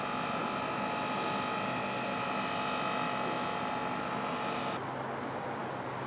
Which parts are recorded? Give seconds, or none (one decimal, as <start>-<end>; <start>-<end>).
0.0-6.1